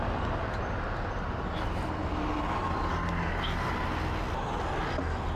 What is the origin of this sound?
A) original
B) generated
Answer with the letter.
A